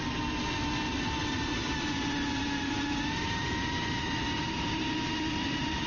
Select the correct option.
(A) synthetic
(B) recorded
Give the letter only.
A